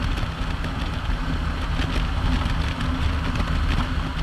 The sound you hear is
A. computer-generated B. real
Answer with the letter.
B